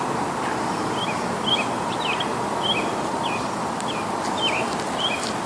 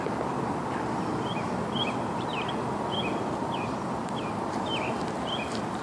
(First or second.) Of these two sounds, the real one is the first